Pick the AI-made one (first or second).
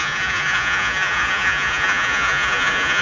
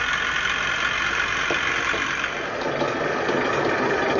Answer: first